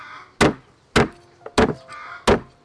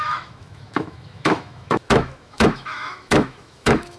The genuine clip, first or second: first